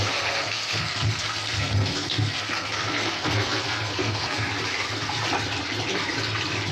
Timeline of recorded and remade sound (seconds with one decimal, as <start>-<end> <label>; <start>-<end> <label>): 0.0-4.5 remade; 4.5-6.7 recorded